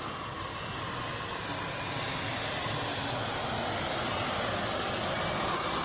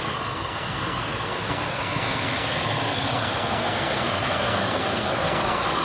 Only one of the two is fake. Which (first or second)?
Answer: second